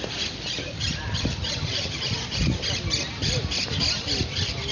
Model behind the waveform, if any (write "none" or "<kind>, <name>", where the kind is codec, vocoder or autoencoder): none